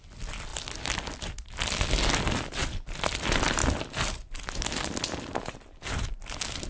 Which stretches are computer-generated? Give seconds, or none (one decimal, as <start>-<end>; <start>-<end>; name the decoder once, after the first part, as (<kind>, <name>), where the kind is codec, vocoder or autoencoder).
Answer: none